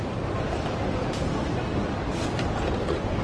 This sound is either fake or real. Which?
real